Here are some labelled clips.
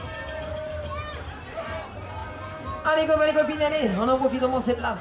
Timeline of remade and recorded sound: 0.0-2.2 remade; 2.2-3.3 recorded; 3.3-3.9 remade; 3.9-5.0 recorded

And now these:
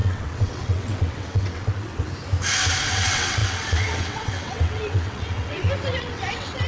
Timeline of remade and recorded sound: 0.0-2.1 remade; 2.1-2.9 recorded; 2.9-6.7 remade

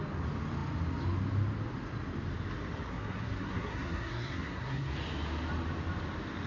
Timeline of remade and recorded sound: 0.0-2.9 recorded; 2.9-4.9 remade; 4.9-6.5 recorded

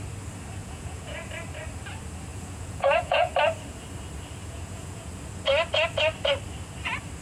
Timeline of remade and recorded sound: 0.0-0.6 recorded; 0.6-1.3 remade; 1.3-2.3 recorded; 2.3-3.3 remade; 3.3-4.4 recorded; 4.4-5.1 remade; 5.1-7.2 recorded

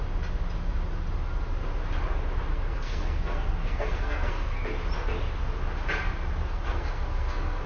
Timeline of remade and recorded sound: 0.0-2.5 recorded; 2.5-4.6 remade; 4.6-6.4 recorded; 6.4-7.7 remade

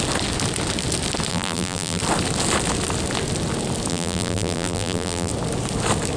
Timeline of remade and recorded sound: 0.0-1.3 recorded; 1.3-2.0 remade; 2.0-3.9 recorded; 3.9-5.3 remade; 5.3-6.2 recorded

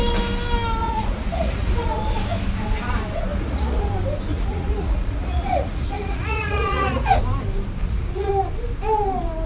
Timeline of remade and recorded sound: 0.0-0.8 recorded; 0.8-2.0 remade; 2.0-3.3 recorded; 3.3-3.9 remade; 3.9-4.3 recorded; 4.3-7.2 remade; 7.2-7.8 recorded; 7.8-8.3 remade; 8.3-9.5 recorded

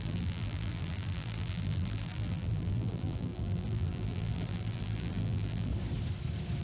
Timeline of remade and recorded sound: 0.0-5.7 remade; 5.7-6.6 recorded